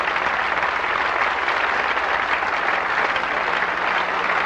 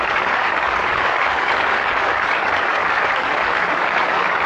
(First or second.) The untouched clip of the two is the first